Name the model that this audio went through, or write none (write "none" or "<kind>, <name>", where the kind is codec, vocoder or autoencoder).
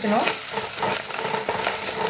none